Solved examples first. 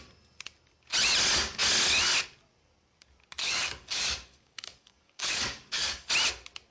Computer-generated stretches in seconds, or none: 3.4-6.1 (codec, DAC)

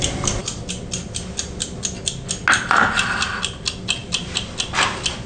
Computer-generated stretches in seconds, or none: none

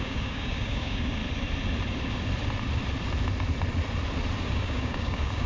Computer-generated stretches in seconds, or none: 0.0-1.2 (codec, DAC); 4.5-5.5

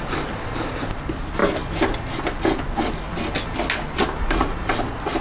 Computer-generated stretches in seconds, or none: none

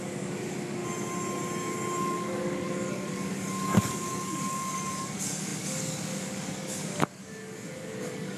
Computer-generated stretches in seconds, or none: 0.0-0.8 (codec, DAC); 2.0-8.4

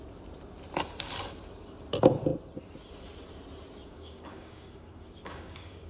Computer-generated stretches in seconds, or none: 3.8-5.9 (codec, DAC)

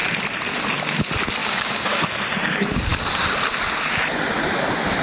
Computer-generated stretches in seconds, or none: 1.4-2.1 (codec, DAC)